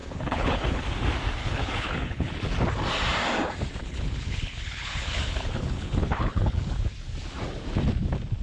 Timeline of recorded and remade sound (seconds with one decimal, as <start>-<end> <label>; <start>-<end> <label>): 0.0-0.8 remade; 0.8-1.4 recorded; 1.4-2.3 remade; 2.3-3.8 recorded; 3.8-6.7 remade; 6.7-8.4 recorded